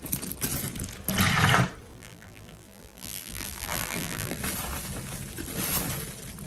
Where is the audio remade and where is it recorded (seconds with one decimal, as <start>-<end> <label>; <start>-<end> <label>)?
0.0-1.9 recorded; 1.9-4.4 remade; 4.4-6.5 recorded